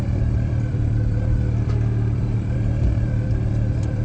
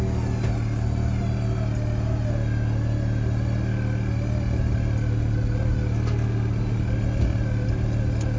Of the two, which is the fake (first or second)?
first